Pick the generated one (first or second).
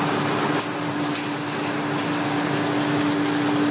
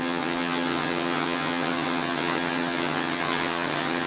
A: second